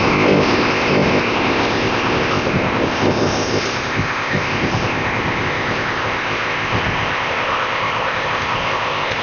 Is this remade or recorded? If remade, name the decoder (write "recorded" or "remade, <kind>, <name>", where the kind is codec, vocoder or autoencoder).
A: remade, codec, ZipCodec